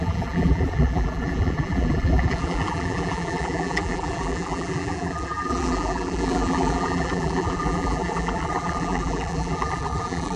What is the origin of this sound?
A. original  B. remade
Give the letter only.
B